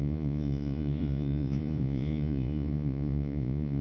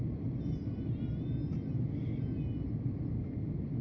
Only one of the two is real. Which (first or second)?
second